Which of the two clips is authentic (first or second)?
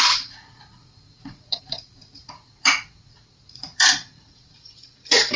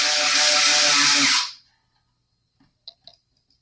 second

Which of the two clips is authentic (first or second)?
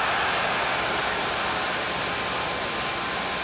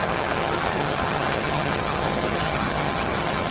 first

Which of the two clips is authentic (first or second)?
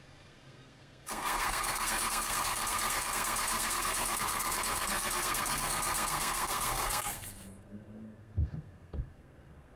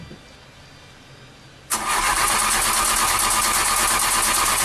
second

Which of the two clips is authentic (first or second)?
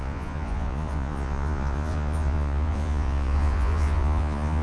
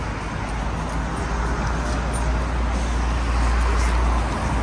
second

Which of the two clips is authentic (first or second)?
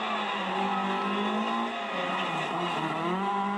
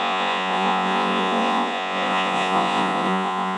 first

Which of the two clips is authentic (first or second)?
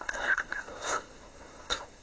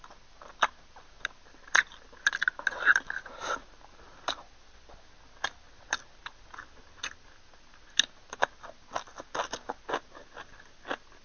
second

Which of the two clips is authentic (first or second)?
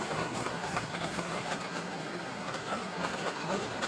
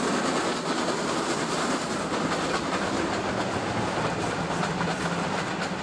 second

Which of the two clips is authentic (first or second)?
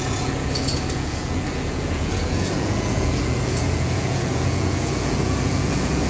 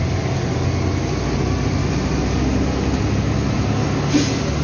second